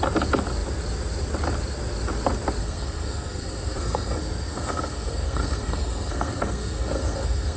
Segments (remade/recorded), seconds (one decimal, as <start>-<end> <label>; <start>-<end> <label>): 0.0-2.6 recorded; 2.6-7.6 remade